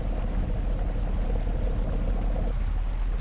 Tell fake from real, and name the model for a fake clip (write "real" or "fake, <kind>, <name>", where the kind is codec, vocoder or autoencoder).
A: real